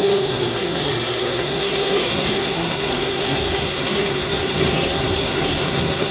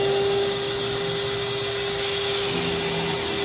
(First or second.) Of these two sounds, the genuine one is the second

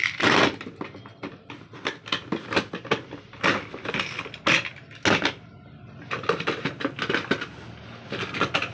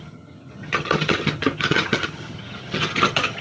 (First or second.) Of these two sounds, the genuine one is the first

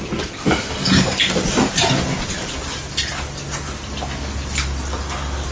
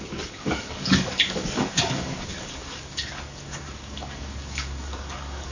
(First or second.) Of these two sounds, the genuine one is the first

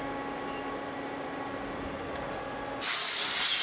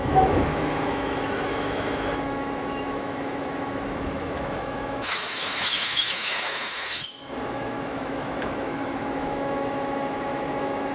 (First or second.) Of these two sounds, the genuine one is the first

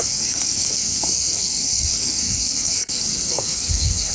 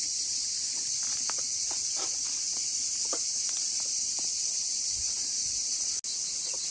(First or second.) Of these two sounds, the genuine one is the second